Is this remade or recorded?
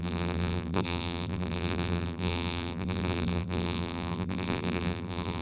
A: remade